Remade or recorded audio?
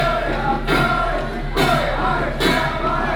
recorded